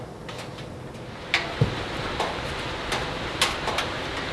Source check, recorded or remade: recorded